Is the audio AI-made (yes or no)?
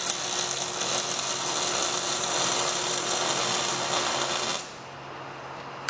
no